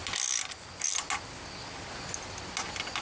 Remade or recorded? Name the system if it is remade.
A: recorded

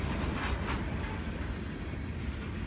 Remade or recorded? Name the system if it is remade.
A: recorded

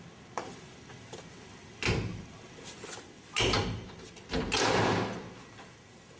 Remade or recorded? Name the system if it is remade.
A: recorded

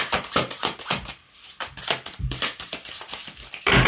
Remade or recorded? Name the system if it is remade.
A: remade, vocoder, BigVGAN v2